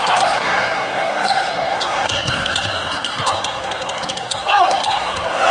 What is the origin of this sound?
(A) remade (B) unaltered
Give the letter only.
A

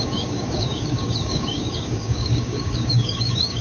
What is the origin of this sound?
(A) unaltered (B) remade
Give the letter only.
B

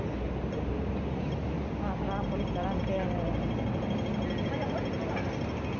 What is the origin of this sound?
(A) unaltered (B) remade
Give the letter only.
A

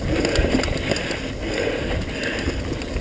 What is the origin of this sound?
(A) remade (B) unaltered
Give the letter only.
B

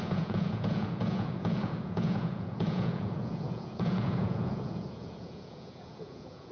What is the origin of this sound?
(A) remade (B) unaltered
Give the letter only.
A